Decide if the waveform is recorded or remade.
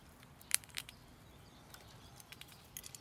remade